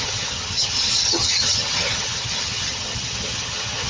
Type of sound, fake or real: fake